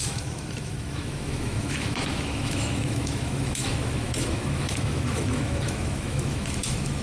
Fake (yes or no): yes